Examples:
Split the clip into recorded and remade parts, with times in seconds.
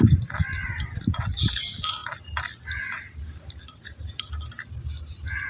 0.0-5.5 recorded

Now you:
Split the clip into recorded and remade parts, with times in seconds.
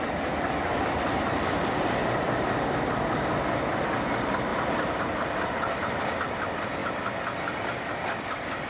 0.0-0.7 recorded; 0.7-3.4 remade; 3.4-4.5 recorded; 4.5-6.0 remade; 6.0-8.7 recorded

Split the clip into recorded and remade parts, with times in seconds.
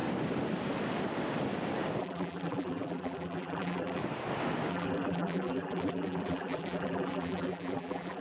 0.0-2.0 recorded; 2.0-4.0 remade; 4.0-4.7 recorded; 4.7-8.2 remade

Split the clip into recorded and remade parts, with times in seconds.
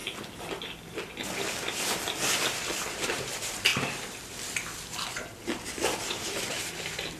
0.0-3.3 recorded; 3.3-7.2 remade